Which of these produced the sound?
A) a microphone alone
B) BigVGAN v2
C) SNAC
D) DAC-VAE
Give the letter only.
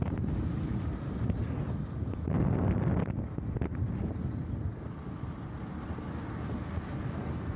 A